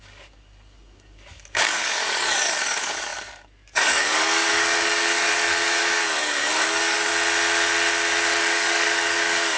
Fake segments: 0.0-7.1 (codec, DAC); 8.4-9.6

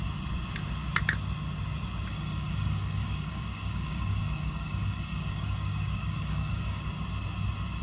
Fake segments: 2.1-6.8 (codec, DAC)

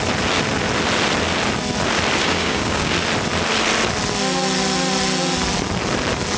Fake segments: 2.2-2.9 (codec, DAC)